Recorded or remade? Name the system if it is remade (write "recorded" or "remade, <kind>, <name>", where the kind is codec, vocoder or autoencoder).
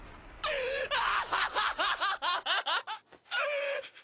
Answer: recorded